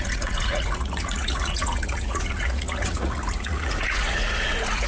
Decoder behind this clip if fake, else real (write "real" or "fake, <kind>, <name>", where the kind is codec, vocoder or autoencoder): fake, vocoder, Vocos